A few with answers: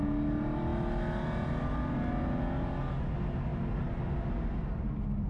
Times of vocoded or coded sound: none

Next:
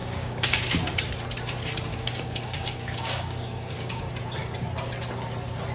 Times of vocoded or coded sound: 0.0-0.7 (codec, DAC); 1.9-4.1

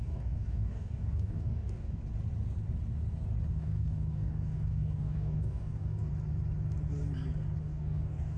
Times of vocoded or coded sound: 0.0-2.0 (codec, DAC); 3.5-6.1; 7.6-8.4

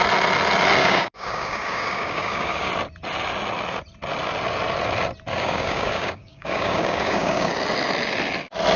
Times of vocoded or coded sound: 0.8-2.7 (codec, DAC); 5.3-7.5